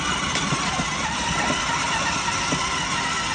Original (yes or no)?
yes